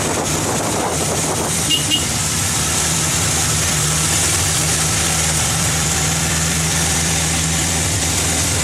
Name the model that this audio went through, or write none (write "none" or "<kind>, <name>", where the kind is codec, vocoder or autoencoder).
vocoder, BigVGAN v2